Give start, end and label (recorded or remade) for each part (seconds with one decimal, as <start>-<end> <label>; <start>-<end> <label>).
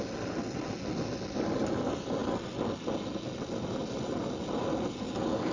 0.0-5.5 recorded